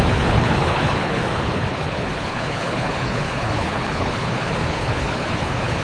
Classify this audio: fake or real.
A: fake